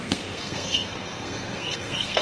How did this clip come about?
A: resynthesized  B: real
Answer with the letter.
A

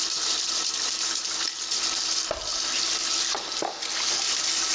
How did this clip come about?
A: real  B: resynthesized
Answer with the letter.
A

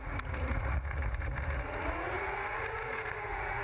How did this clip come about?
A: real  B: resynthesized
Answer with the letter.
B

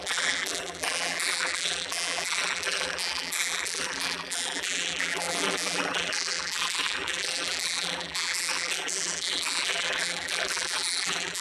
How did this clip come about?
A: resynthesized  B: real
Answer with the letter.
A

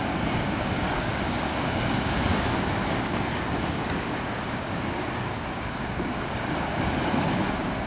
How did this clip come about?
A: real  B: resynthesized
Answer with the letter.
B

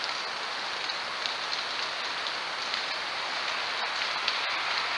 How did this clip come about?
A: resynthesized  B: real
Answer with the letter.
B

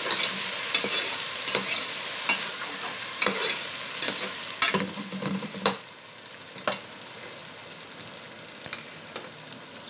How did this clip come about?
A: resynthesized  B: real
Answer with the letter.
B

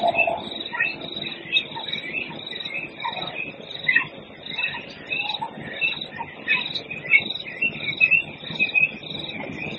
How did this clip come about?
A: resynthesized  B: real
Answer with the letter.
B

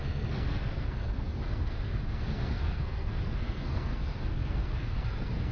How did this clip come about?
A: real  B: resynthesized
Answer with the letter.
B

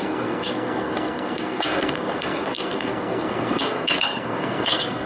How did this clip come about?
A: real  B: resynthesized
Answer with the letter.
B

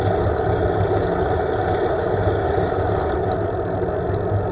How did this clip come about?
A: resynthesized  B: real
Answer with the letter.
B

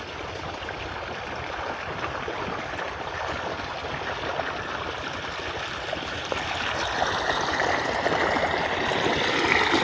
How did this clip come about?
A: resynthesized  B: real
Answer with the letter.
B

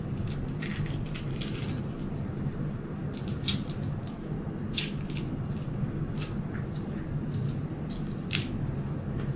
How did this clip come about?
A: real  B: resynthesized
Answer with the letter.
A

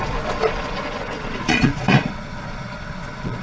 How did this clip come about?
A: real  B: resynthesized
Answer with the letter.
B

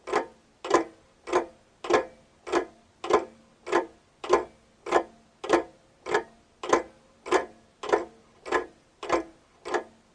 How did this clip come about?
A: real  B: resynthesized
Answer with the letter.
A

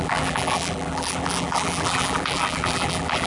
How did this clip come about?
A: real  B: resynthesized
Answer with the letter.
B